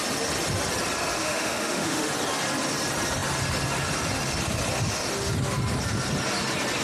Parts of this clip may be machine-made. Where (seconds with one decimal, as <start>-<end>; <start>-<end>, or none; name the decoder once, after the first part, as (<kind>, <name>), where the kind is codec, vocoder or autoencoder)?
1.2-2.1 (autoencoder, DAC-VAE)